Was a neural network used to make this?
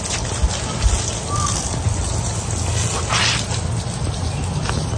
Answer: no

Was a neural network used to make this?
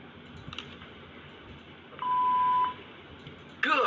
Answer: no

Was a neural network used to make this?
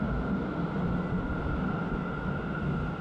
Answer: no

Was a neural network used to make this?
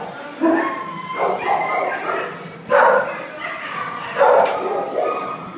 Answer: no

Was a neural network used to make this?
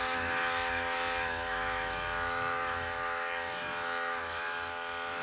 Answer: yes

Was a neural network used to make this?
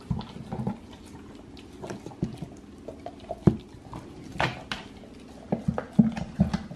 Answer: no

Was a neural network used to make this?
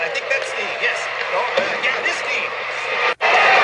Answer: no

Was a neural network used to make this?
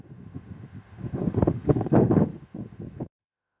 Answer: yes